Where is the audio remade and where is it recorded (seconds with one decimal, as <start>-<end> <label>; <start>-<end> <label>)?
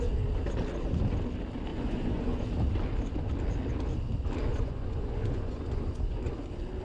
0.0-1.7 recorded; 1.7-2.5 remade; 2.5-4.5 recorded; 4.5-6.3 remade; 6.3-6.8 recorded